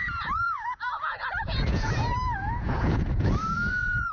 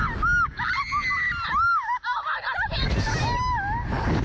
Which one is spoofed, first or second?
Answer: first